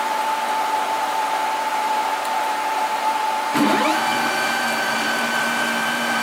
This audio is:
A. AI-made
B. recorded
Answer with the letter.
A